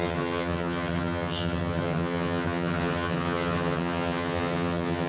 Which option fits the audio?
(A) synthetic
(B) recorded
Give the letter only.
A